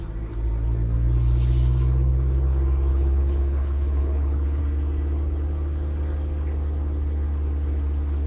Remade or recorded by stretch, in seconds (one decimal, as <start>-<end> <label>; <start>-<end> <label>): 0.0-2.9 recorded; 2.9-4.6 remade; 4.6-8.3 recorded